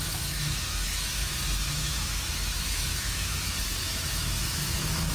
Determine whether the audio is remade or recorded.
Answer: remade